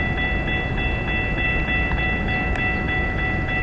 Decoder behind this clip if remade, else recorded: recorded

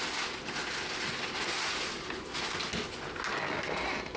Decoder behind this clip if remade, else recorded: recorded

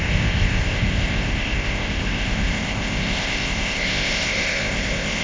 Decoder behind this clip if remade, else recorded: remade, codec, ZipCodec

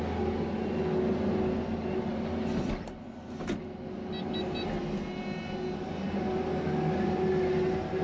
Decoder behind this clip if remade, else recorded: recorded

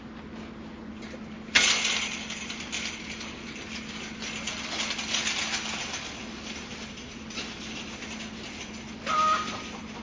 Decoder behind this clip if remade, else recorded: recorded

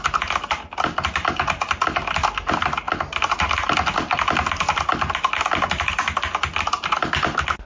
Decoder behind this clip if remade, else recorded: recorded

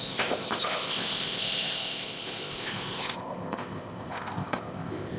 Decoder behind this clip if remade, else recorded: remade, codec, ZipCodec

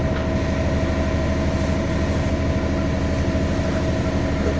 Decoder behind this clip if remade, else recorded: recorded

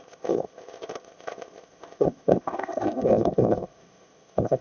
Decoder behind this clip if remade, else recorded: remade, codec, ZipCodec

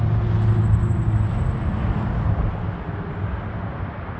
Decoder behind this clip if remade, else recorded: recorded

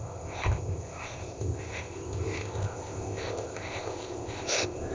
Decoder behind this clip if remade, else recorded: remade, codec, ZipCodec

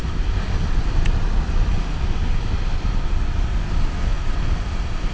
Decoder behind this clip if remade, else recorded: recorded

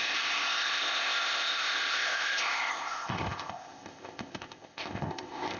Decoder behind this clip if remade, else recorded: remade, codec, ZipCodec